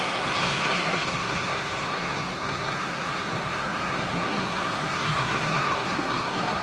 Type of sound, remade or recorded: remade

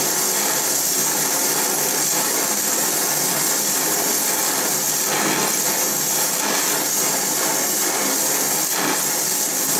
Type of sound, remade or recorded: recorded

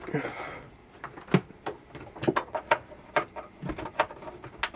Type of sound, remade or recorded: recorded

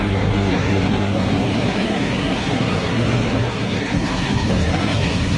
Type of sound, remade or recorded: remade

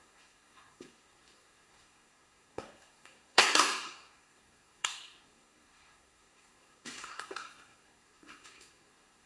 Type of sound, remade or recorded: remade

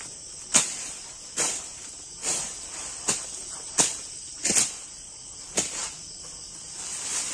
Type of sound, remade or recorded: recorded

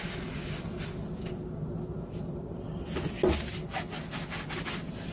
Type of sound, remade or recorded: recorded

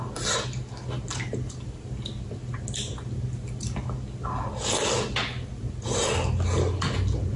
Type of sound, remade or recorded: recorded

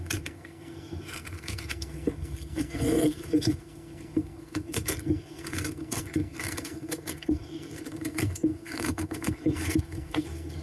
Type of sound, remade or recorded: remade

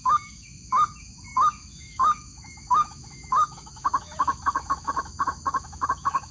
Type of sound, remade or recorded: remade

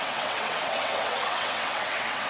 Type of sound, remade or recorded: remade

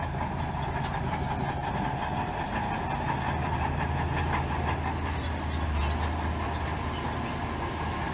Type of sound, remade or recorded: recorded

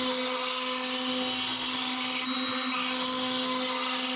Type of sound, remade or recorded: recorded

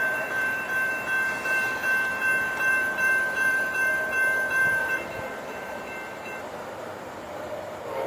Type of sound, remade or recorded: remade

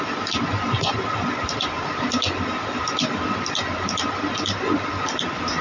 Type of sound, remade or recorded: recorded